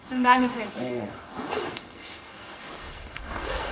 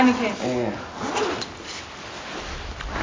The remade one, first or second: first